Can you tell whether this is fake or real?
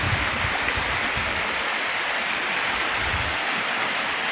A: real